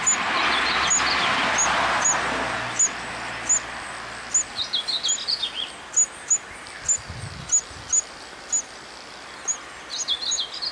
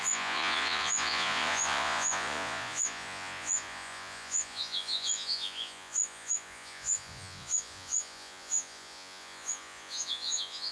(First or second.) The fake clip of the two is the second